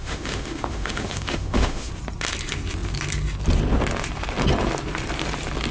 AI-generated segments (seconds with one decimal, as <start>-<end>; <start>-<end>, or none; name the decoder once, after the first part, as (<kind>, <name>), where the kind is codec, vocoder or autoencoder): 0.0-1.9 (autoencoder, DAC-VAE)